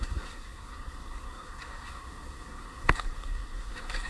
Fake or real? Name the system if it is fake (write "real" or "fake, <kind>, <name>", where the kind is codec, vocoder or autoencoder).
fake, codec, SNAC